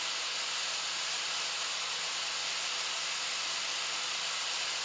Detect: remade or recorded recorded